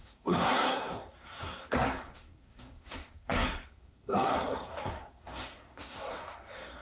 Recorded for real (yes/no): no